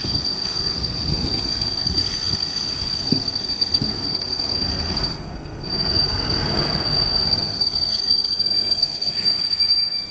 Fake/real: fake